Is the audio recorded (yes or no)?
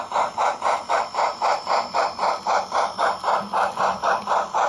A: yes